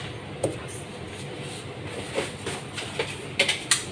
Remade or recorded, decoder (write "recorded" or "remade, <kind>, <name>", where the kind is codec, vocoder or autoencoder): recorded